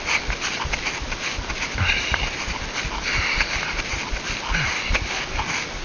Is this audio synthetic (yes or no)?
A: no